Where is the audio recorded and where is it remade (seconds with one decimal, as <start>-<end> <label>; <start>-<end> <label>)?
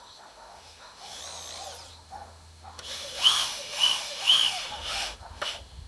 0.0-1.2 remade; 1.2-1.9 recorded; 1.9-5.9 remade